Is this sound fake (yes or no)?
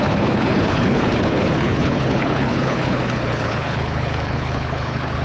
yes